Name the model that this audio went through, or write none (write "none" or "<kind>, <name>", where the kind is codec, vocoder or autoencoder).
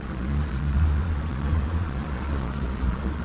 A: vocoder, Vocos